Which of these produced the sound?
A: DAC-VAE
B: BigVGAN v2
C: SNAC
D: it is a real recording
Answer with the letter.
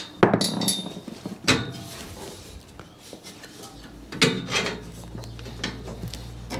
D